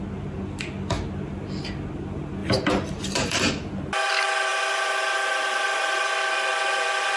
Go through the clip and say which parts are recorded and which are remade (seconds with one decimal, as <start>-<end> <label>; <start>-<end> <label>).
0.0-2.4 recorded; 2.4-3.5 remade; 3.5-4.5 recorded; 4.5-6.1 remade; 6.1-7.2 recorded